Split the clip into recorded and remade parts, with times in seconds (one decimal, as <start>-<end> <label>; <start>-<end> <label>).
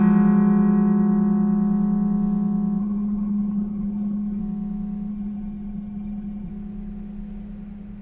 0.0-2.8 recorded; 2.8-4.4 remade; 4.4-5.1 recorded; 5.1-6.5 remade; 6.5-8.0 recorded